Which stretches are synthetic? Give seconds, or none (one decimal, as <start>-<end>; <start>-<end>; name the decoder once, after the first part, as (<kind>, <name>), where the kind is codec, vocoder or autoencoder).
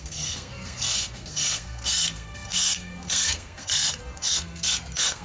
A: 0.0-5.2 (codec, SNAC)